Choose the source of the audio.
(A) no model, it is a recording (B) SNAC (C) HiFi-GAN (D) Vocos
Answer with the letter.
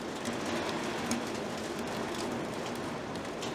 A